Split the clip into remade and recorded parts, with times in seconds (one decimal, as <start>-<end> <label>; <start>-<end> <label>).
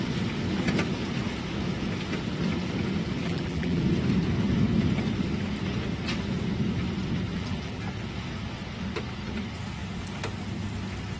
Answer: 0.0-3.2 recorded; 3.2-3.8 remade; 3.8-7.3 recorded; 7.3-7.8 remade; 7.8-11.2 recorded